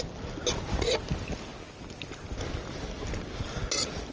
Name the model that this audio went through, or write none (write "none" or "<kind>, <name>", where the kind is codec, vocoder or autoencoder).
none